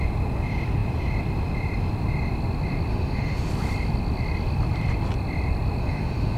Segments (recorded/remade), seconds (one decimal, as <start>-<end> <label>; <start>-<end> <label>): 0.0-2.9 recorded; 2.9-3.5 remade; 3.5-5.8 recorded; 5.8-6.4 remade